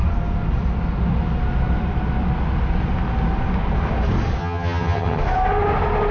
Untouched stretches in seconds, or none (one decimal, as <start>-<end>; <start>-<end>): 0.0-4.4; 5.2-6.1